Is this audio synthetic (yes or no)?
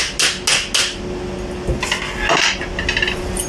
no